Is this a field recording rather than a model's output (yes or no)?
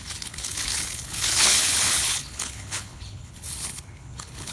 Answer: no